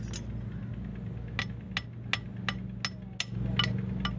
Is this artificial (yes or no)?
no